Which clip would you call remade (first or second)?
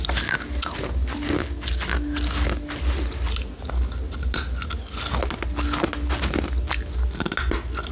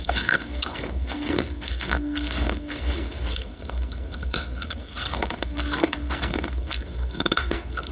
second